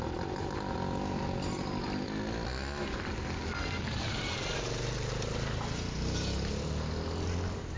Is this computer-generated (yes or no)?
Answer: no